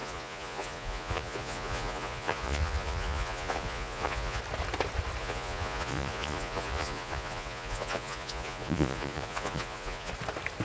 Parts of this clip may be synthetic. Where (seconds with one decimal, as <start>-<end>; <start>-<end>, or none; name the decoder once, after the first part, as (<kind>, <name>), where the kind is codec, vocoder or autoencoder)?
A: 0.0-4.4 (vocoder, Vocos); 5.2-10.1